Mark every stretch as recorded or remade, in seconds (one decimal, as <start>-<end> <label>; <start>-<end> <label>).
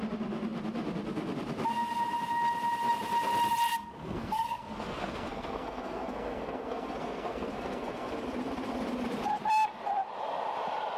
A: 0.0-3.7 recorded; 3.7-8.2 remade; 8.2-11.0 recorded